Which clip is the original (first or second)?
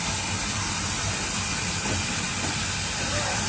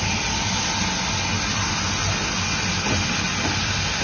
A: second